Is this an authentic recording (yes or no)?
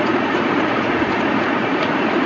no